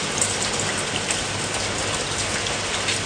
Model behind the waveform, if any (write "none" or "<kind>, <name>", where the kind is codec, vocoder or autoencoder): none